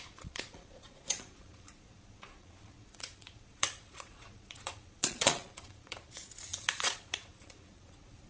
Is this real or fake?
fake